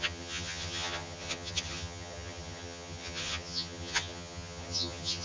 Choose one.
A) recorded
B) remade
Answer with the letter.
B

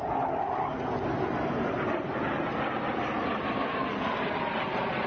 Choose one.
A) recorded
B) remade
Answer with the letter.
A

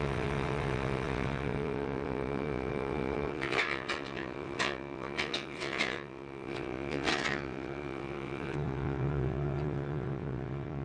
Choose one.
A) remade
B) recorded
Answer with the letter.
A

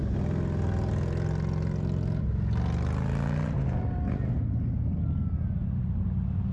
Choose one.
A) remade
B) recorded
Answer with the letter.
B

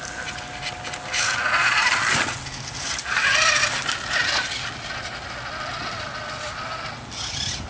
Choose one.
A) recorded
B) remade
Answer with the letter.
A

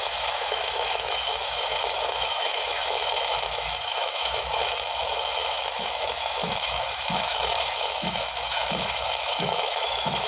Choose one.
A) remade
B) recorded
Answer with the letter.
A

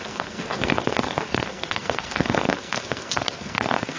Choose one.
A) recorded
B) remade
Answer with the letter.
B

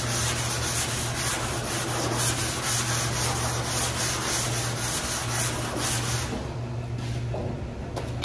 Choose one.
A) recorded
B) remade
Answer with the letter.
A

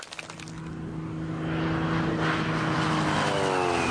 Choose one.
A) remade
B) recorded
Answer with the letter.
B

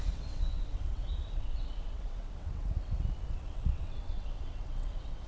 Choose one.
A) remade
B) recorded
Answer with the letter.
A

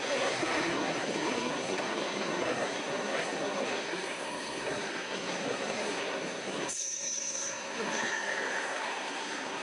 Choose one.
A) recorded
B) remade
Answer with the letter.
B